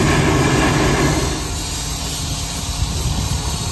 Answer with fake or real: real